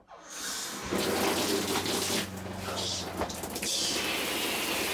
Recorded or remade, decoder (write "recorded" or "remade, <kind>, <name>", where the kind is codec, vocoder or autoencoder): recorded